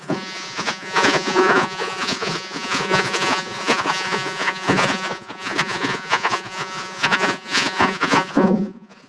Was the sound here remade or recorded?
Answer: remade